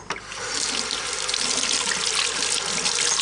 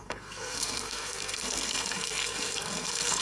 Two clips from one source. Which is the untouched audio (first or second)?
first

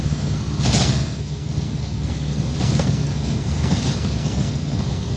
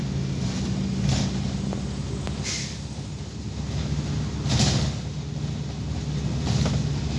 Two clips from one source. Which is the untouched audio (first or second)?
second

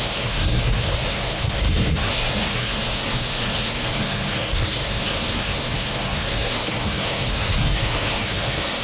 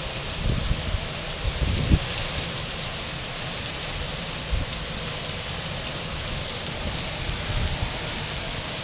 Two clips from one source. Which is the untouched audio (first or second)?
second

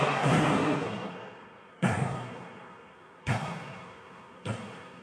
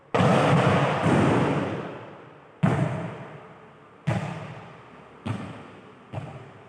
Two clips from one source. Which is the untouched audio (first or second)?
second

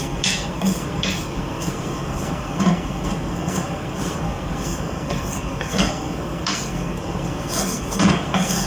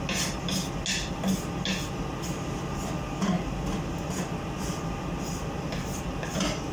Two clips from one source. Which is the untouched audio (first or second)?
second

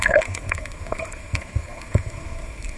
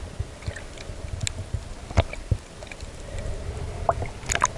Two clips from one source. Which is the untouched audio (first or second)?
second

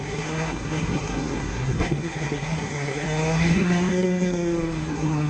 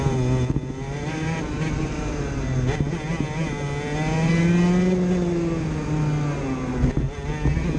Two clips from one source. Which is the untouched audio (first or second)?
second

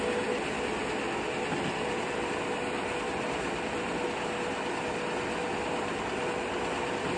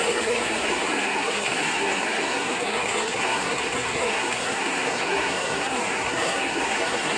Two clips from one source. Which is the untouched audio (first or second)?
first